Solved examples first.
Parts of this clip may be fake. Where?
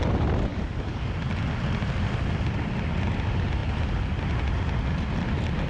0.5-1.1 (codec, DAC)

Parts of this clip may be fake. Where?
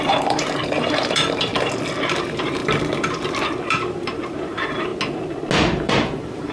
0.0-1.5 (vocoder, BigVGAN v2); 2.1-2.6; 4.0-4.9; 5.8-6.5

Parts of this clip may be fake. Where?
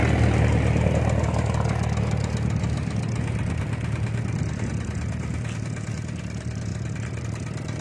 none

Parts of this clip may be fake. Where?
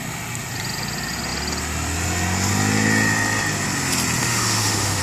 4.2-5.0 (autoencoder, DAC-VAE)